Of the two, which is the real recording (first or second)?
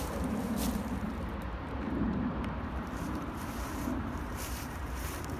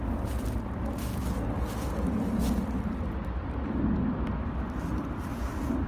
second